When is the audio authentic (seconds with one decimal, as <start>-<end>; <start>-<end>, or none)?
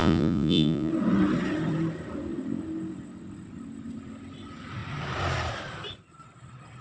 0.9-6.8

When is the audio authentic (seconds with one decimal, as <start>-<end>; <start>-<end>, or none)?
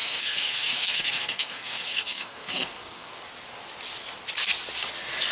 3.2-5.3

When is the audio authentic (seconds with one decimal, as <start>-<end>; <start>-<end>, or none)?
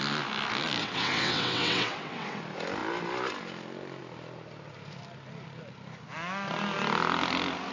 0.0-0.8; 2.4-7.7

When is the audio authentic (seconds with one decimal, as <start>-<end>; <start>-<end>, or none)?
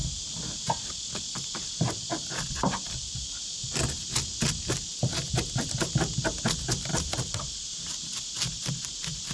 0.0-6.9; 7.5-9.3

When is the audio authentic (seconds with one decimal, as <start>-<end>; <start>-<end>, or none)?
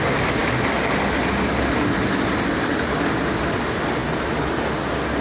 0.0-5.2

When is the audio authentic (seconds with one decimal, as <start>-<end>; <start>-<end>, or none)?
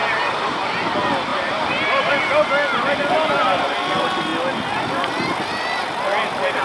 0.6-1.3; 2.1-6.6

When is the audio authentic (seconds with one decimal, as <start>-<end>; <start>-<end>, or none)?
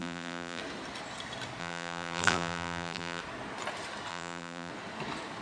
0.6-1.6; 3.2-4.1; 4.7-5.4